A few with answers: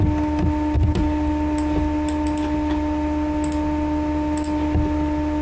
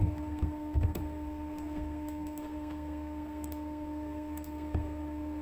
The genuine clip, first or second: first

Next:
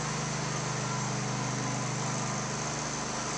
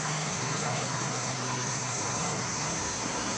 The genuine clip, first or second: first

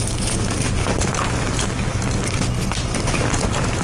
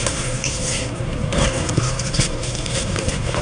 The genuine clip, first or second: first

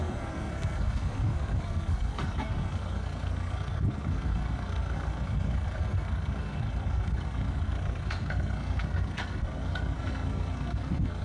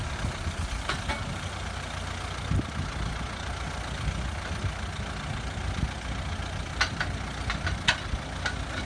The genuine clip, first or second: second